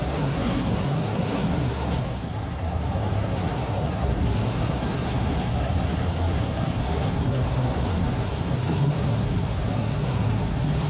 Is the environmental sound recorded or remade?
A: remade